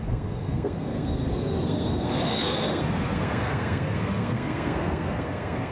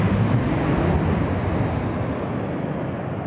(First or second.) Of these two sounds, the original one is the second